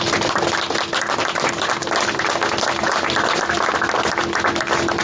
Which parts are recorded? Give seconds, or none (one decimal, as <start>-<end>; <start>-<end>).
0.0-5.0